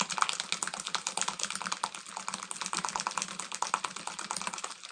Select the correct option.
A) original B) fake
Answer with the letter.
A